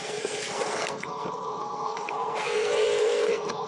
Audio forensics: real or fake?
fake